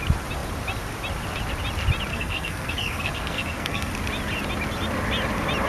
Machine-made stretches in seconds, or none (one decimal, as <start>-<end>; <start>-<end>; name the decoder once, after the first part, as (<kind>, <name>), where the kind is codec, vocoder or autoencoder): 2.1-3.9 (codec, SNAC)